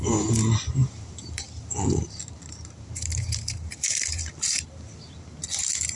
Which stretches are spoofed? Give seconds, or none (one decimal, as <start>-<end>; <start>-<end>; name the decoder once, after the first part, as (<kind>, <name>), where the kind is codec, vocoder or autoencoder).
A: 0.8-4.2 (vocoder, BigVGAN v2)